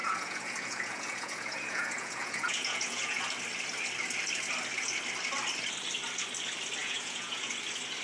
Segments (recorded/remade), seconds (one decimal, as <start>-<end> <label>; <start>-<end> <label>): 0.0-3.2 remade; 3.2-6.8 recorded; 6.8-7.5 remade; 7.5-8.0 recorded